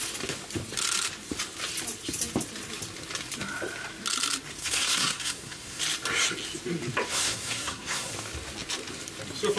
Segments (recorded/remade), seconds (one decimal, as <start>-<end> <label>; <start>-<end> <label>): 0.0-4.6 recorded; 4.6-5.8 remade; 5.8-7.1 recorded; 7.1-8.1 remade; 8.1-9.6 recorded